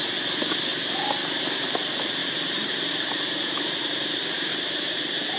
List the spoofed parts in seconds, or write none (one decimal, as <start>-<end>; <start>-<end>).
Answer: 2.2-5.0